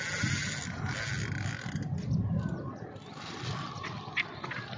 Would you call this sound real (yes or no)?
yes